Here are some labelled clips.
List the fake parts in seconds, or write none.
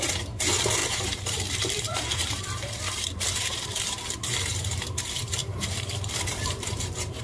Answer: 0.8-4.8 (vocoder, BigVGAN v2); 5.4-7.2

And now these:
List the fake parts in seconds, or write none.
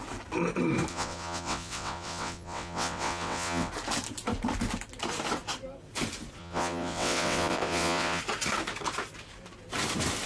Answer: 0.9-3.7 (vocoder, WaveNeXt); 6.4-8.2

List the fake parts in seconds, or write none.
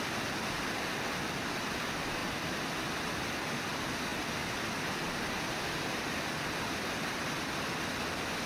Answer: none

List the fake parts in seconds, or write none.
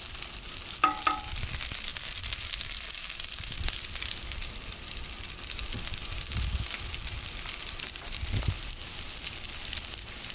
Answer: 0.0-6.0 (vocoder, BigVGAN v2); 7.6-10.3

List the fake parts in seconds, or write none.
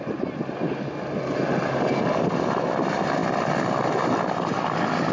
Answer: none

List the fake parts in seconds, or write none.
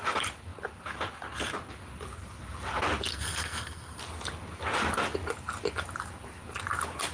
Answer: 3.1-4.0 (codec, SNAC)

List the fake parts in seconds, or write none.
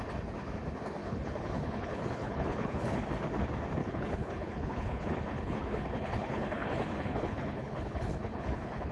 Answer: 1.0-3.1 (codec, HILCodec); 3.8-8.9